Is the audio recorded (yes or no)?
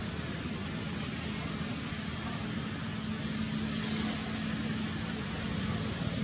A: yes